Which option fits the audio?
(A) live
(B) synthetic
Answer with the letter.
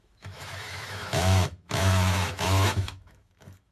B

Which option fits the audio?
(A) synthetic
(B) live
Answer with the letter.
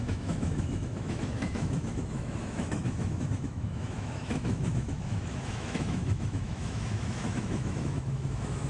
A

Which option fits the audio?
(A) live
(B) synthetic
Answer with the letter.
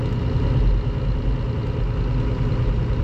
A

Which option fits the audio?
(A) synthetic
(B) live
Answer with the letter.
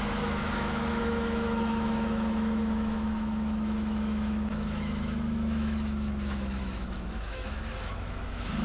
A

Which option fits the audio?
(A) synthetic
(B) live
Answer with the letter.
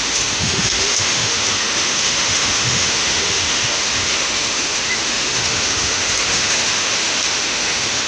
A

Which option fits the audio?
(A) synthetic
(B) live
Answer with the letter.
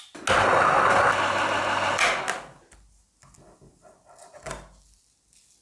B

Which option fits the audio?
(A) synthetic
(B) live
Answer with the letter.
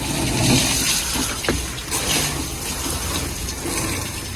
B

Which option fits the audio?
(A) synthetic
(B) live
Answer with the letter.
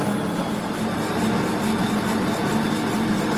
B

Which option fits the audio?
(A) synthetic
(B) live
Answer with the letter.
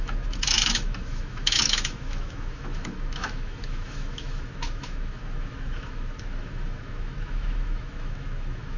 A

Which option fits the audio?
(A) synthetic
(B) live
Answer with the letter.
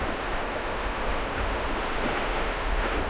A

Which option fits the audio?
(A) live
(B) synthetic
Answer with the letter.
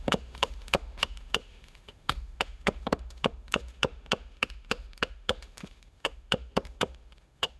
B